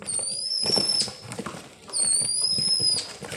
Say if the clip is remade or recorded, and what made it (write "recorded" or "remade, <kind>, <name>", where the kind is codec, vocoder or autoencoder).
recorded